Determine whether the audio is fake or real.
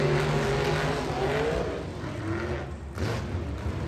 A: real